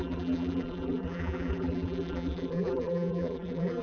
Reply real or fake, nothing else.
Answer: fake